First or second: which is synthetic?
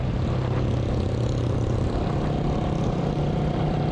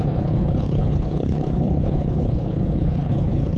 second